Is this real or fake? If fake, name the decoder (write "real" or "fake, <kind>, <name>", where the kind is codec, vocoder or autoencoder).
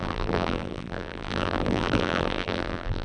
fake, vocoder, BigVGAN v2